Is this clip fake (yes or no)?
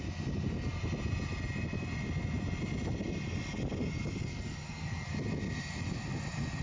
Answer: no